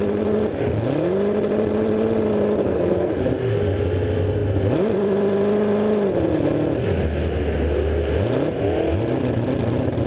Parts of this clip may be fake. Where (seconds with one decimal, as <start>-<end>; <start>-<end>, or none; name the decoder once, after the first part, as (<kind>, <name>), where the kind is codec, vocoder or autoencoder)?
2.6-3.2 (codec, SNAC)